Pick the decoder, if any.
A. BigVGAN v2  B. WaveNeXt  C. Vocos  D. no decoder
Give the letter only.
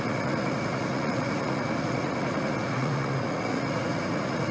C